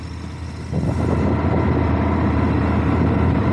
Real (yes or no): yes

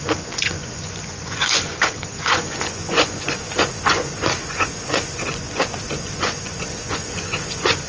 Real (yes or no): no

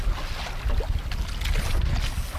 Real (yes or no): yes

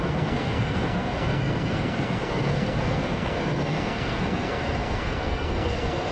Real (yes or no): no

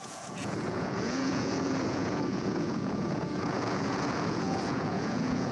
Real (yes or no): no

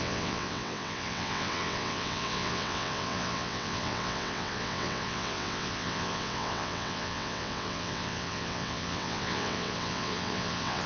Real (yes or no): no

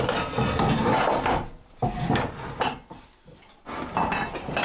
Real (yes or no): yes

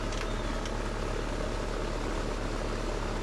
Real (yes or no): yes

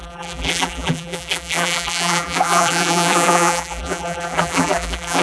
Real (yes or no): no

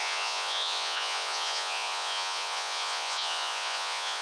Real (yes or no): no